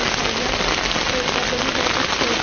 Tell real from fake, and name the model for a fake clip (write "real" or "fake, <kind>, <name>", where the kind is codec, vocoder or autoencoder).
real